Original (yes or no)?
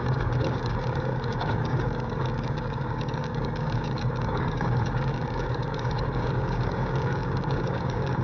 no